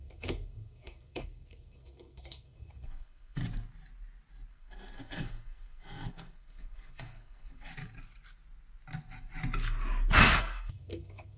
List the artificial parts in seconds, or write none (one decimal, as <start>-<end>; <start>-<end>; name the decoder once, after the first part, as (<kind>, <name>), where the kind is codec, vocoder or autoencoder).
0.0-3.4 (codec, SNAC); 4.5-7.7; 10.4-11.4